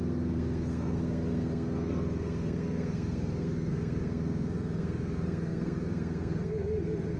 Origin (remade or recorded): remade